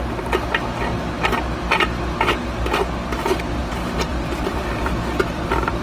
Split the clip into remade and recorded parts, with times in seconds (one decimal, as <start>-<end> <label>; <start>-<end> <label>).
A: 0.0-3.6 recorded; 3.6-5.8 remade